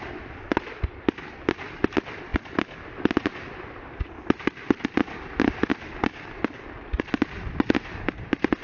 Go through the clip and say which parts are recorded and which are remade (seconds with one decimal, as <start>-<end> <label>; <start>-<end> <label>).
0.0-2.3 recorded; 2.3-2.9 remade; 2.9-5.7 recorded; 5.7-7.0 remade; 7.0-8.6 recorded